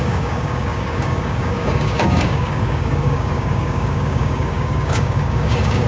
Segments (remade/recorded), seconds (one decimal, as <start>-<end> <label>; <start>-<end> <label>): 0.0-5.9 remade